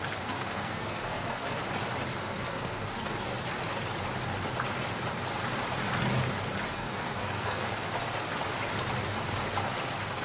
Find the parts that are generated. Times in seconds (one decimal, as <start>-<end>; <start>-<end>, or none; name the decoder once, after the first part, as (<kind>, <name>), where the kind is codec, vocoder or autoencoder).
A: 0.0-1.6 (codec, SNAC); 2.2-3.3; 6.7-7.7